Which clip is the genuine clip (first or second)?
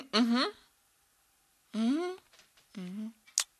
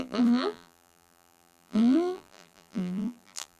first